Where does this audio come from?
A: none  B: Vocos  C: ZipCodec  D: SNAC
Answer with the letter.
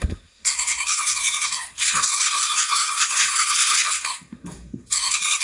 D